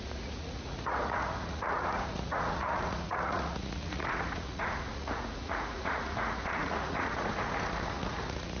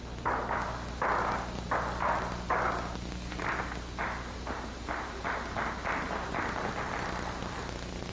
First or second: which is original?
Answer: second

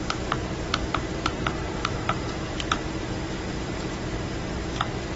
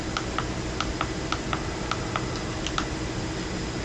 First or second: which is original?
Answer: second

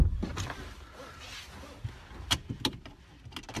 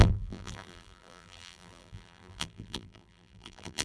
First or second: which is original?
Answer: first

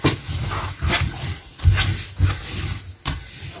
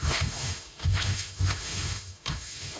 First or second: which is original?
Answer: first